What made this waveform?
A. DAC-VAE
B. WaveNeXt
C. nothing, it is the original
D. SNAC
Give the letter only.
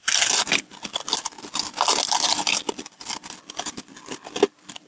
C